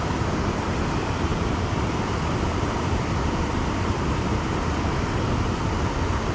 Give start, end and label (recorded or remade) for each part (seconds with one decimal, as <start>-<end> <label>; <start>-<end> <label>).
0.0-1.3 recorded; 1.3-4.0 remade; 4.0-6.3 recorded